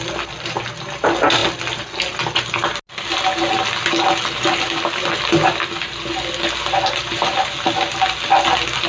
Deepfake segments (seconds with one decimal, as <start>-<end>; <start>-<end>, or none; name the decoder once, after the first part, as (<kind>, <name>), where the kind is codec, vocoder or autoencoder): none